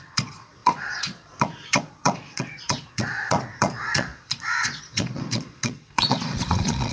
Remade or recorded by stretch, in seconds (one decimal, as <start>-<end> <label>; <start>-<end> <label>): 0.0-6.9 remade